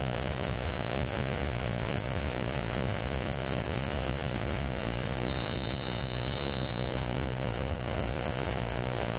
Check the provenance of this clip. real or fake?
fake